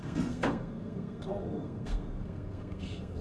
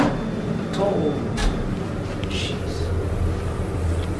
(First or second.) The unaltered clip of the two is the second